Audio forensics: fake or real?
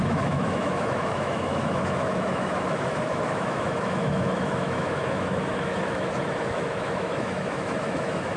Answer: fake